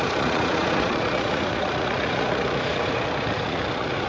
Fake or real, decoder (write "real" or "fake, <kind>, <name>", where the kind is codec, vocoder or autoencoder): fake, vocoder, Vocos